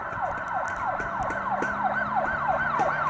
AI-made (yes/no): no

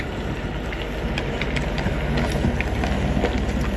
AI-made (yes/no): no